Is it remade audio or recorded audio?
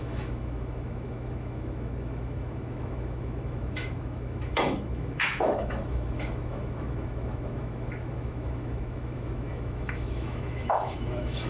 remade